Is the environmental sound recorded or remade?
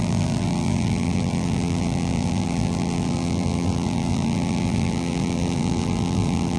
remade